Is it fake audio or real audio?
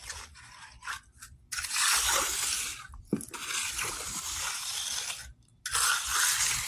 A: real